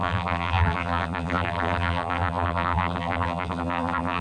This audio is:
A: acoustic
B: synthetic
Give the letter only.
B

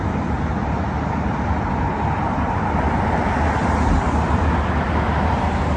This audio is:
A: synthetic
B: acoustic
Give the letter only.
B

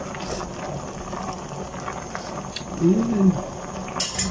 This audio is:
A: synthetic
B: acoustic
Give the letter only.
B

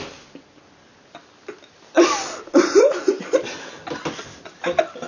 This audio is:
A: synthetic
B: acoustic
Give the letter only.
B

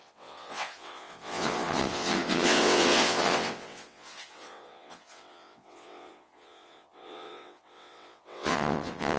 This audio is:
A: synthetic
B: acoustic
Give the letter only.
A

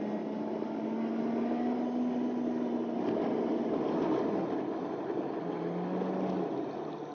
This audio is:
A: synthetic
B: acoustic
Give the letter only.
B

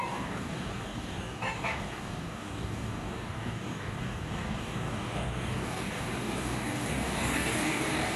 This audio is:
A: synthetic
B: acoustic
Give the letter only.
A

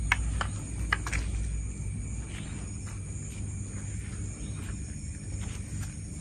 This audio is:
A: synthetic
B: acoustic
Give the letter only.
B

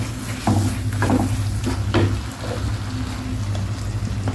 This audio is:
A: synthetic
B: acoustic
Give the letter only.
B